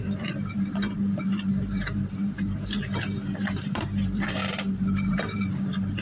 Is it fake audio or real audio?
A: fake